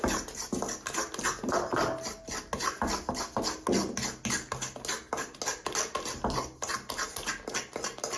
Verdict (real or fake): real